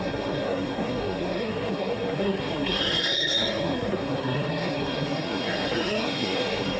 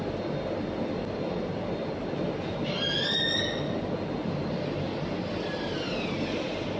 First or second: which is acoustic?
second